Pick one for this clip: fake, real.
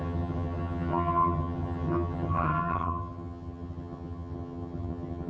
fake